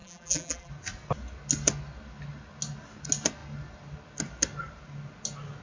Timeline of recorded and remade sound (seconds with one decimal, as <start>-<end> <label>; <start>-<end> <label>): 0.0-0.7 remade; 0.7-5.6 recorded